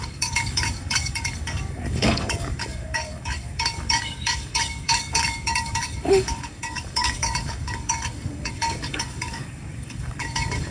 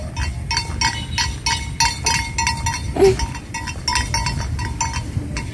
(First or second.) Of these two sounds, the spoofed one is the first